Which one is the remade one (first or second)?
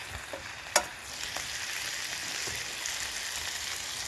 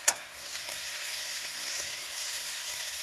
second